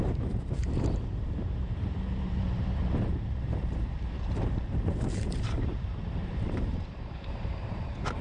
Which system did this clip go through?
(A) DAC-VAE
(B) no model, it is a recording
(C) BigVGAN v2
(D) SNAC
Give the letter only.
C